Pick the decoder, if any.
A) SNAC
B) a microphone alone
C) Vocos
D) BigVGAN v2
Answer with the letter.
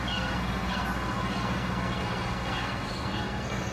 A